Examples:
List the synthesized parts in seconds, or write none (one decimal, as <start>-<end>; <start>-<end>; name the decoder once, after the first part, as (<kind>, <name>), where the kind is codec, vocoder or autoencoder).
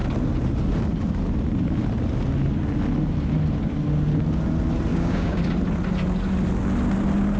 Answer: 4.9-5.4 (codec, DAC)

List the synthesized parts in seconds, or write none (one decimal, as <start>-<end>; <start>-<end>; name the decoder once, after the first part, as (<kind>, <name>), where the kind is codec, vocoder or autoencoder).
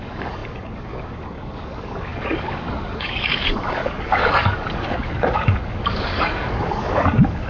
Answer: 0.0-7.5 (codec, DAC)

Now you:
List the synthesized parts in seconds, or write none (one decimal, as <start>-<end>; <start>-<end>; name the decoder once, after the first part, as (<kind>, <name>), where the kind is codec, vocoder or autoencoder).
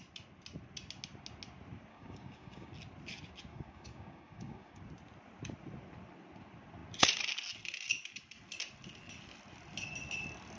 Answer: 1.9-2.7 (codec, DAC); 3.5-4.8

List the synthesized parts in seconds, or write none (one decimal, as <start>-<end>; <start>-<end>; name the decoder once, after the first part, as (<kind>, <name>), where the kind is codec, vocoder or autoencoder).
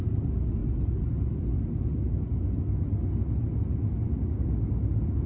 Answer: none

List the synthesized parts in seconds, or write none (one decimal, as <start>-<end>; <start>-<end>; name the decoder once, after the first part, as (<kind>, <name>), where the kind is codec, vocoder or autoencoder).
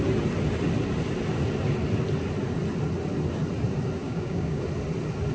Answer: 4.0-4.6 (codec, DAC)